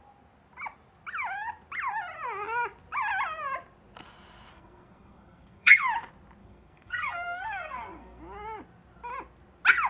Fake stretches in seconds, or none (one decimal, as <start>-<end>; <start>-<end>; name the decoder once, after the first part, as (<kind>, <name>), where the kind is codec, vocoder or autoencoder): 4.5-5.8 (codec, SNAC); 6.4-8.2